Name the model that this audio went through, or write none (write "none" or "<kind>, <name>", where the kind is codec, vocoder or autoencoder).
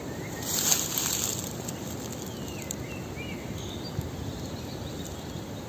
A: none